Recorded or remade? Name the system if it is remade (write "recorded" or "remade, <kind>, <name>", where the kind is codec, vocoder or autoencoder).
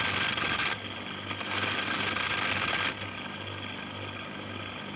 recorded